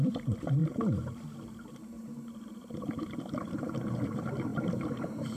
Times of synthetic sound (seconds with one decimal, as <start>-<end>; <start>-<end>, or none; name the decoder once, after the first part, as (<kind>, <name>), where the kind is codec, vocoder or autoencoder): 0.0-5.4 (vocoder, BigVGAN v2)